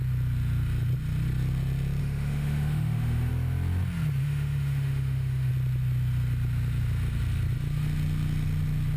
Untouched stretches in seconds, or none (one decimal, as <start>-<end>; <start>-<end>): 0.0-2.0; 3.3-4.2; 5.5-9.0